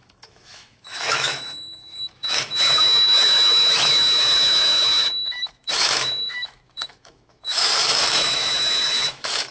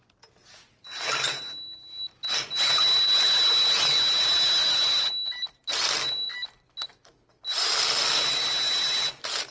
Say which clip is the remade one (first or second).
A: first